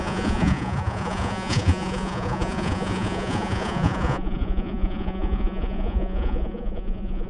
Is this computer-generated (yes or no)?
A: yes